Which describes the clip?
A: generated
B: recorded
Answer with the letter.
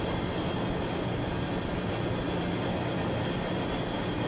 B